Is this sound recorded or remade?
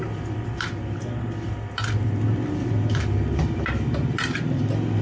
recorded